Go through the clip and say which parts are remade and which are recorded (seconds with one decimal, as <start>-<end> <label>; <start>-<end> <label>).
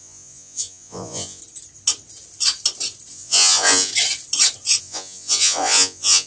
0.0-1.4 remade; 1.4-3.1 recorded; 3.1-3.9 remade; 3.9-4.8 recorded; 4.8-6.3 remade